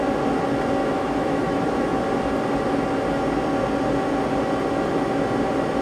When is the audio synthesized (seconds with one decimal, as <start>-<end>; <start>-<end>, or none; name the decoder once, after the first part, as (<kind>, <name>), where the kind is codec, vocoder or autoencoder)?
0.8-2.0 (autoencoder, DAC-VAE)